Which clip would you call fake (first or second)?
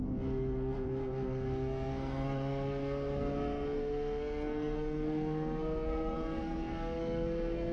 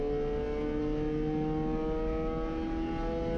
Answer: first